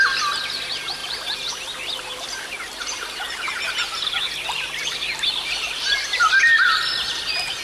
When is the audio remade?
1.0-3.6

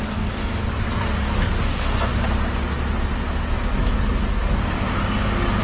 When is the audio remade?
0.0-0.5; 1.6-2.1

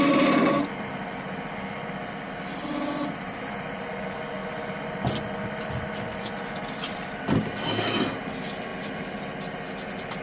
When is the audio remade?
none

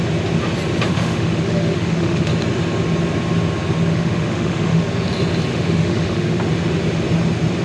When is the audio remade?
0.9-2.3; 3.9-4.8; 5.5-6.4

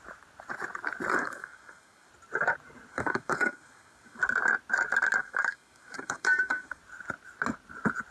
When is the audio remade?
1.1-2.1; 2.9-4.2; 5.2-6.8